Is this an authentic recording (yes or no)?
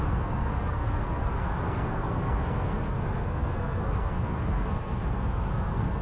no